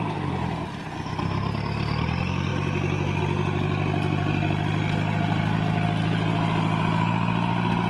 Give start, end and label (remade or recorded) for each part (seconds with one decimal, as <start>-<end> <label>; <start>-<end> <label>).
0.0-7.9 recorded